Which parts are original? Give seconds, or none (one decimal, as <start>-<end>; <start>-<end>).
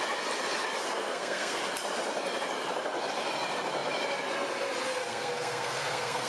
0.0-1.0; 1.6-4.9